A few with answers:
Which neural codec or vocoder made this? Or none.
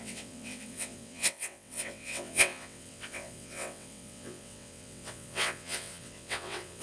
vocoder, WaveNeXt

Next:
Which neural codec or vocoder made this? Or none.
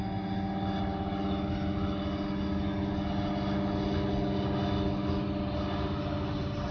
none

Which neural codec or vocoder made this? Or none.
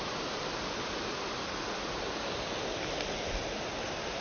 none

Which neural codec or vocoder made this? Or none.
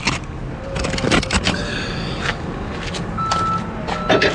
none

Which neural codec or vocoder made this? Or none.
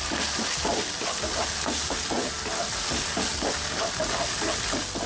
none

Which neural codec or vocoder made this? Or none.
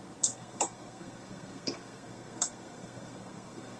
codec, SNAC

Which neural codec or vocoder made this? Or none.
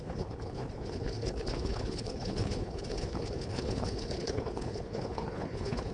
codec, HILCodec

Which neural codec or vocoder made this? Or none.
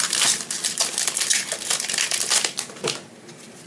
none